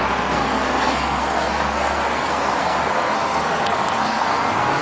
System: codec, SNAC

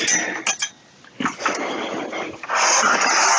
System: none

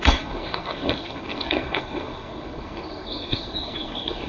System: codec, SNAC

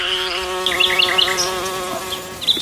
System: none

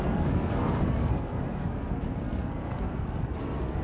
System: codec, SNAC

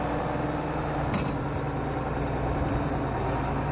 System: none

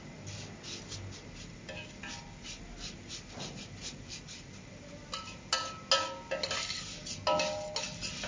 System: none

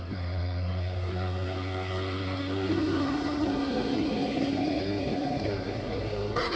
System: codec, SNAC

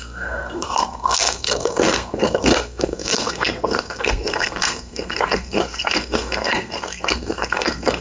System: codec, SNAC